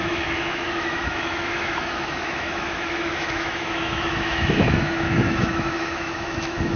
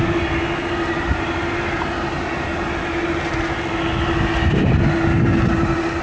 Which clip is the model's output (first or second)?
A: first